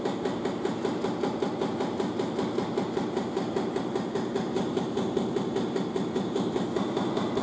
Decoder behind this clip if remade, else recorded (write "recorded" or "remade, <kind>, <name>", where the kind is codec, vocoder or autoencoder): recorded